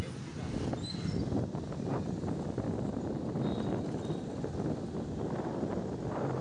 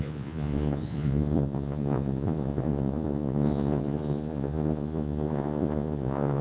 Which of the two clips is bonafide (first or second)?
first